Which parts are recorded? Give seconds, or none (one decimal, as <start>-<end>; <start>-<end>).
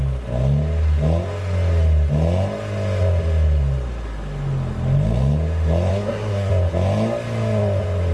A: 0.0-5.9; 6.5-8.1